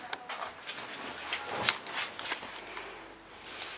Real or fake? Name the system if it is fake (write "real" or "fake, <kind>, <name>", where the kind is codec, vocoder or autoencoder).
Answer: real